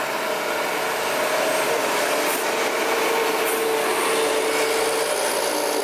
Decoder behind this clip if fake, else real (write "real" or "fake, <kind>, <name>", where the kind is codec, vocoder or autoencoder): real